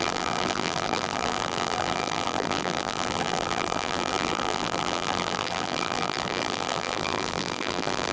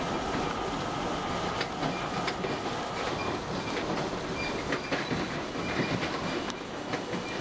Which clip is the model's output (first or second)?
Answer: first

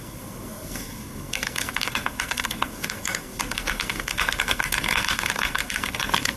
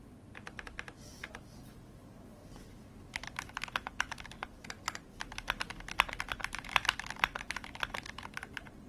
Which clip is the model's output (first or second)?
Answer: first